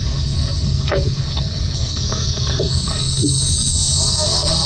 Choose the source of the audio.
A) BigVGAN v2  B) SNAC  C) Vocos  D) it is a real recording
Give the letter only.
B